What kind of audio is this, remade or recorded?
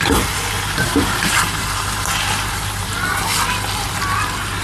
remade